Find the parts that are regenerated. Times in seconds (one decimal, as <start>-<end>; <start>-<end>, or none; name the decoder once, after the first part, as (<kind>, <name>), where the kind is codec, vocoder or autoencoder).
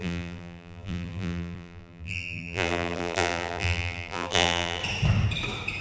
0.0-4.8 (vocoder, BigVGAN v2)